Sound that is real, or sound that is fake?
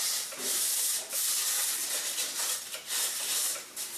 fake